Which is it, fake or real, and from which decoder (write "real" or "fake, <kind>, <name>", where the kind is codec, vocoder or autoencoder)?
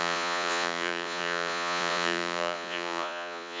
fake, vocoder, Vocos